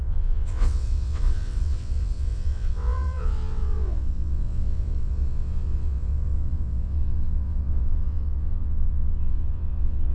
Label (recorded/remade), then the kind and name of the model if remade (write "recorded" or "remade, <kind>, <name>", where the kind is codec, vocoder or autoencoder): remade, vocoder, WaveNeXt